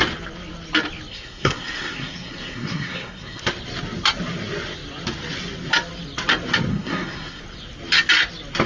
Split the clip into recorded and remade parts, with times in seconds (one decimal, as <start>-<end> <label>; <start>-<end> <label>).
0.0-1.1 recorded; 1.1-3.4 remade; 3.4-6.7 recorded; 6.7-7.4 remade; 7.4-8.7 recorded